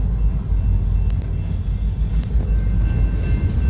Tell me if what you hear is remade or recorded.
recorded